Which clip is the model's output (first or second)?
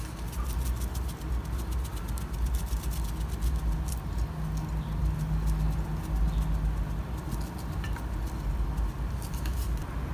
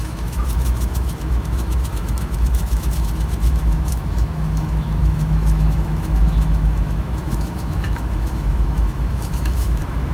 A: second